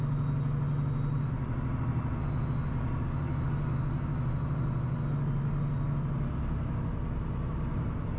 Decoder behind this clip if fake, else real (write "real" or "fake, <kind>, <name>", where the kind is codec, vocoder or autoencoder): real